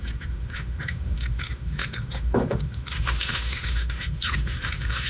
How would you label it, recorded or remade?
remade